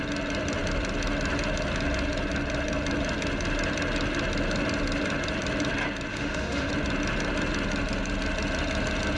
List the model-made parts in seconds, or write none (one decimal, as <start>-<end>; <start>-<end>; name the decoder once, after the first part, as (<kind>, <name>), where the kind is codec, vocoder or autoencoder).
6.1-6.7 (autoencoder, DAC-VAE)